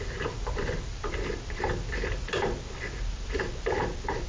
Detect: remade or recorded recorded